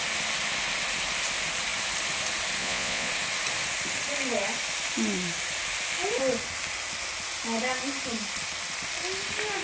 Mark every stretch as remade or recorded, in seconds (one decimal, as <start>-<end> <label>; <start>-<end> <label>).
0.0-2.6 recorded; 2.6-3.1 remade; 3.1-9.6 recorded